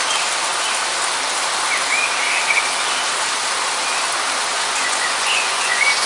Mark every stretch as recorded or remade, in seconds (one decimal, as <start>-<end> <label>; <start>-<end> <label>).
0.0-4.5 recorded; 4.5-6.1 remade